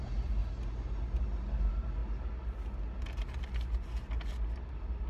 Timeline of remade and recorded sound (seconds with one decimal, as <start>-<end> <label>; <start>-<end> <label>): 0.0-0.4 remade; 0.4-1.6 recorded; 1.6-2.0 remade; 2.0-5.1 recorded